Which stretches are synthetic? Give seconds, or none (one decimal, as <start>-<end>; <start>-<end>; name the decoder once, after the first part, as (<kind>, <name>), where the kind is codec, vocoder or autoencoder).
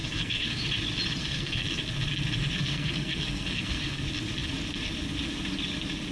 0.0-0.6 (codec, SNAC); 1.2-1.8; 2.6-4.0